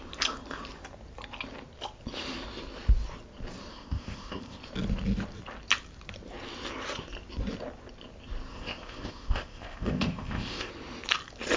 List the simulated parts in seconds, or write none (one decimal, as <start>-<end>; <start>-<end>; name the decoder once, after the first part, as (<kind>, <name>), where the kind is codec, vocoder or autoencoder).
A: 3.7-4.6 (codec, ZipCodec); 8.5-10.7

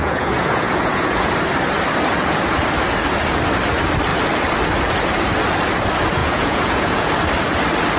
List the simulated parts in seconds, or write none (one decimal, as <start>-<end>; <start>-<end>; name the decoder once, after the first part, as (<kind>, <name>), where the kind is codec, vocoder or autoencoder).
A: 0.0-1.3 (vocoder, Vocos); 6.2-7.1